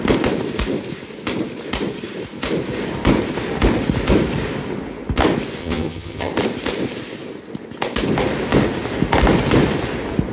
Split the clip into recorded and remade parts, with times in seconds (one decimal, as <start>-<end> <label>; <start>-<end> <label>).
0.0-5.6 recorded; 5.6-6.3 remade; 6.3-10.3 recorded